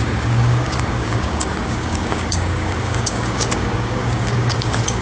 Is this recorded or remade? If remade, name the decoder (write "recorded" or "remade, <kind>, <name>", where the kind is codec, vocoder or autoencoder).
remade, codec, DAC